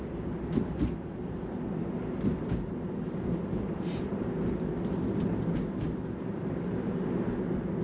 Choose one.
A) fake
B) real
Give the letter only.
B